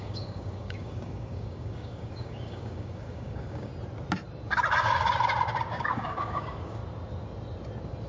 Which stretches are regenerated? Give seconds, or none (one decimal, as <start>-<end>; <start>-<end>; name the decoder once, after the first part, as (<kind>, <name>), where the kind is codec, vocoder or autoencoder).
0.0-3.7 (codec, DAC); 5.7-6.8